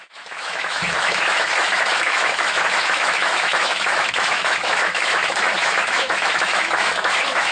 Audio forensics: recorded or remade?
remade